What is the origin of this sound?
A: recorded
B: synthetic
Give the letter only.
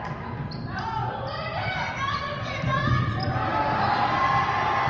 A